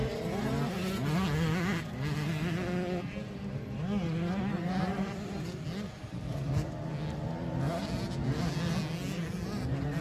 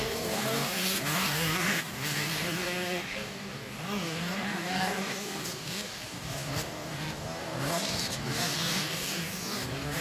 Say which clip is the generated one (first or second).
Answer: second